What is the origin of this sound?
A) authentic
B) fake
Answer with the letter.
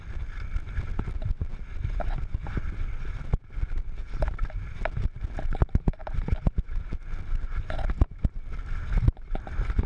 A